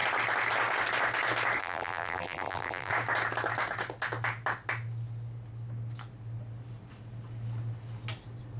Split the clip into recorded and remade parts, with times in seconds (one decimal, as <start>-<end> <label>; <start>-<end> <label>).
0.0-1.6 recorded; 1.6-2.9 remade; 2.9-8.6 recorded

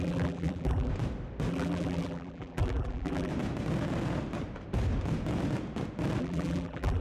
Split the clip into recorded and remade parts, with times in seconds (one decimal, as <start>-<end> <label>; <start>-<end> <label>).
0.0-0.9 remade; 0.9-1.5 recorded; 1.5-3.3 remade; 3.3-6.2 recorded; 6.2-7.0 remade